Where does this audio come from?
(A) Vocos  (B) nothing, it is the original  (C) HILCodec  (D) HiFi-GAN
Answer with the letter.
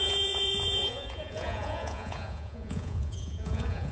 A